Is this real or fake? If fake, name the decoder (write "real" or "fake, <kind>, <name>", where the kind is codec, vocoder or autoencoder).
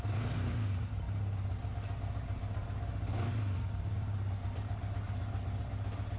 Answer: real